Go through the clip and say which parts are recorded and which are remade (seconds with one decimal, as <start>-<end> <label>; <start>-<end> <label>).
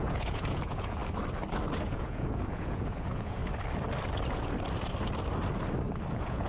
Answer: 0.0-1.0 remade; 1.0-1.8 recorded; 1.8-3.4 remade; 3.4-6.1 recorded; 6.1-6.5 remade